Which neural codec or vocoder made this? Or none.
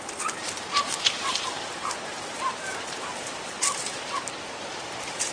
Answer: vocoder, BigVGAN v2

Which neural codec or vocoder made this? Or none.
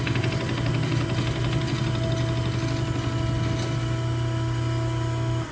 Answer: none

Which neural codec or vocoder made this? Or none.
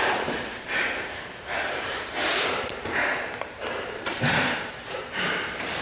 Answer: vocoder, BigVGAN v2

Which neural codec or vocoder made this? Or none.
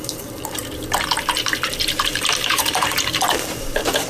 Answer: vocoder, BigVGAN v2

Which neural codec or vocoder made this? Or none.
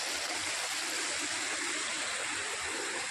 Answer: none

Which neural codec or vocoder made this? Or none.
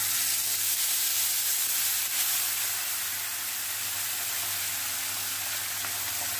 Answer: none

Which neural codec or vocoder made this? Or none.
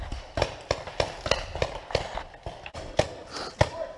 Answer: vocoder, BigVGAN v2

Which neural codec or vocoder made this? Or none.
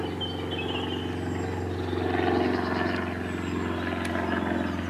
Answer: none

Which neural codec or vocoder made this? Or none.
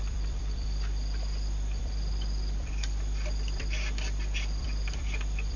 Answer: vocoder, BigVGAN v2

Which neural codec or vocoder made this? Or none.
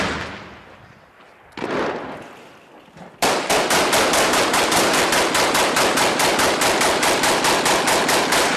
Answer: none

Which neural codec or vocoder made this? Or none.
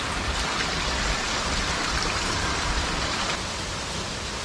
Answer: vocoder, BigVGAN v2